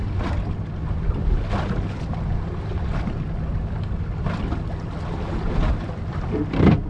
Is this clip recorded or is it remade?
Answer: recorded